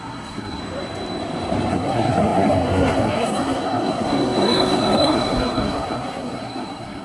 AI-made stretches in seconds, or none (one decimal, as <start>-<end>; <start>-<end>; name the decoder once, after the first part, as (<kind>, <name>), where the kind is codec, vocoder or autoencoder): 0.0-0.6 (codec, SNAC); 1.7-7.0